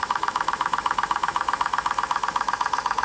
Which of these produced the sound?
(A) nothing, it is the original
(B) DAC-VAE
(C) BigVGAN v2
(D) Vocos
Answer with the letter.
B